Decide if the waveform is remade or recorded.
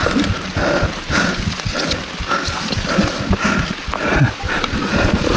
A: recorded